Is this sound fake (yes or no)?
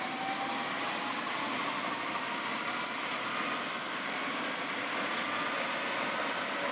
no